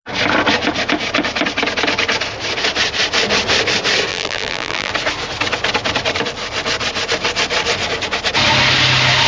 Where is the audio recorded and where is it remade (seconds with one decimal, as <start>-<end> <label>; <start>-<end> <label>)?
0.0-4.1 recorded; 4.1-4.9 remade; 4.9-9.3 recorded